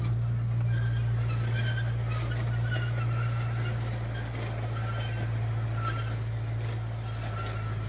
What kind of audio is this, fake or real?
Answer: real